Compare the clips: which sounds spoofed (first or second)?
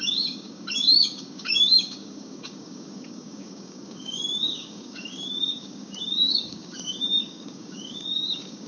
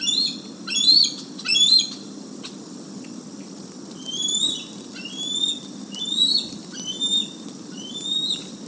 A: first